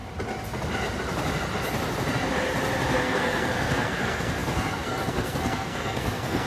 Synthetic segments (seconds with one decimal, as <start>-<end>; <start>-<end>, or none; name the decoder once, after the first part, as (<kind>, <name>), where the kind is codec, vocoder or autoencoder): 3.0-6.5 (codec, SNAC)